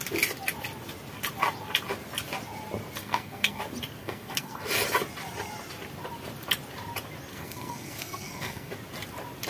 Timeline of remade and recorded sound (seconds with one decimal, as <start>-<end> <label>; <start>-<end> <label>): 0.0-3.0 recorded; 3.0-3.6 remade; 3.6-4.0 recorded; 4.0-4.6 remade; 4.6-7.3 recorded; 7.3-8.7 remade; 8.7-9.5 recorded